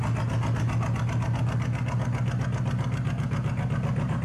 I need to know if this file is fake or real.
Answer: real